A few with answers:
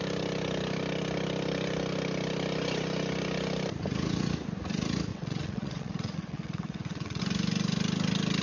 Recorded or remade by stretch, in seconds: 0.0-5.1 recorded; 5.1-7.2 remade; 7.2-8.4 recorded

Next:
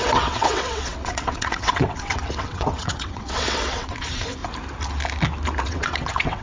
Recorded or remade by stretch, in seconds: 0.0-4.4 remade; 4.4-5.6 recorded; 5.6-6.4 remade